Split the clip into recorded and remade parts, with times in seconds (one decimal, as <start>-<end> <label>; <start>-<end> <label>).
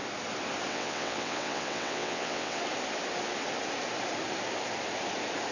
0.0-0.7 recorded; 0.7-2.6 remade; 2.6-5.5 recorded